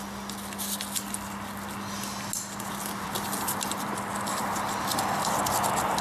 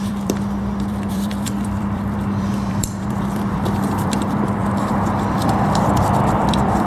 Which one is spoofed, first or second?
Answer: second